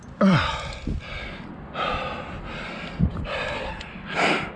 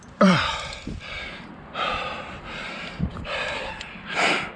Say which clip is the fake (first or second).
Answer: second